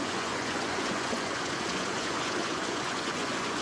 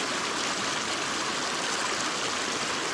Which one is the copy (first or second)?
first